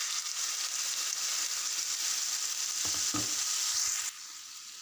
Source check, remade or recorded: recorded